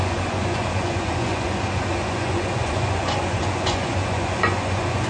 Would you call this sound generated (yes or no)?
yes